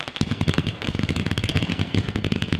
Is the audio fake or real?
fake